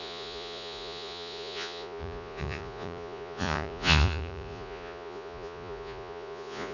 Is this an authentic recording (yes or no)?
no